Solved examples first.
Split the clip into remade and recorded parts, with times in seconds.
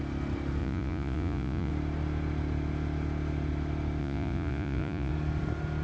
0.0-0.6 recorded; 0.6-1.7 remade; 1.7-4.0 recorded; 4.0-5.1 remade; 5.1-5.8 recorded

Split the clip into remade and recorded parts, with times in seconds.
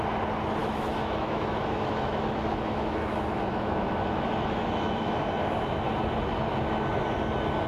0.0-0.6 recorded; 0.6-5.2 remade; 5.2-7.7 recorded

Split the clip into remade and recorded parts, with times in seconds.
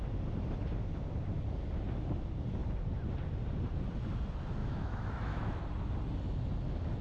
0.0-4.6 recorded; 4.6-5.6 remade; 5.6-7.0 recorded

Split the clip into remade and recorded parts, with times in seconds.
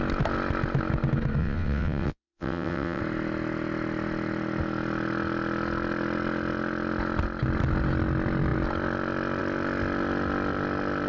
0.0-1.4 recorded; 1.4-3.0 remade; 3.0-11.1 recorded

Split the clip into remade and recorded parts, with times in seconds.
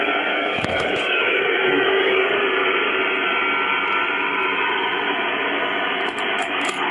0.0-2.4 remade; 2.4-6.4 recorded; 6.4-6.9 remade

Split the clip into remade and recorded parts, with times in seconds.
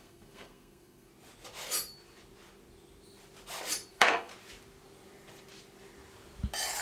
0.0-1.1 remade; 1.1-3.9 recorded; 3.9-4.3 remade; 4.3-6.8 recorded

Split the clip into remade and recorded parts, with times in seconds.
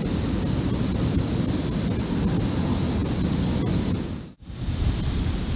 0.0-5.6 recorded